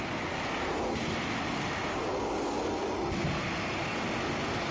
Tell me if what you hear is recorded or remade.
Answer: recorded